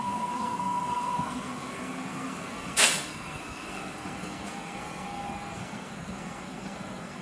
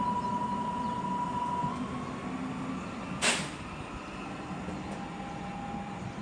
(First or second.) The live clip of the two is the second